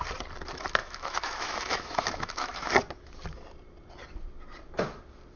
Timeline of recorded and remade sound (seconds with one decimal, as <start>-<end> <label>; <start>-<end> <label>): 0.0-0.8 recorded; 0.8-2.7 remade; 2.7-5.4 recorded